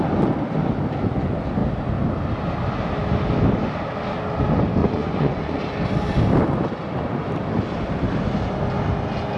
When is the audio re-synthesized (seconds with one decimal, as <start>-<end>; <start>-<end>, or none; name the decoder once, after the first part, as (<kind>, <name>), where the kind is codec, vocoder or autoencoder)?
4.8-5.6 (vocoder, Vocos)